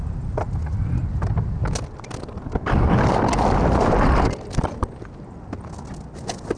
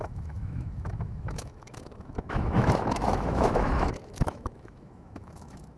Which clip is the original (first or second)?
first